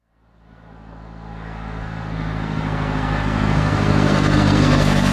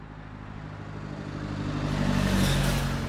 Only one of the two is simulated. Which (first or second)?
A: first